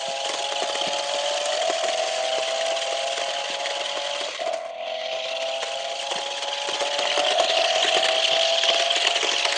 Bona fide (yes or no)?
yes